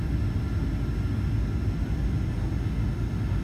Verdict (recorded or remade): recorded